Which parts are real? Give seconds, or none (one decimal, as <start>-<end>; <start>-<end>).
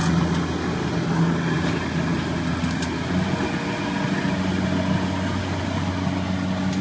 0.0-6.8